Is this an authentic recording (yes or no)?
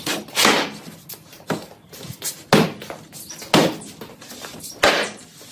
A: yes